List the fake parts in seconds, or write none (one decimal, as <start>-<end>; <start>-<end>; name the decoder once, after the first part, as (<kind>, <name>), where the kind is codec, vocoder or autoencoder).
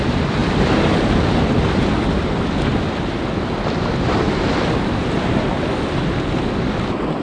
0.4-4.3 (vocoder, BigVGAN v2)